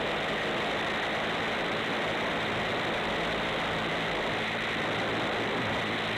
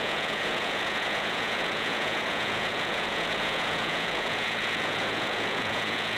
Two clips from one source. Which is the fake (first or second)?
second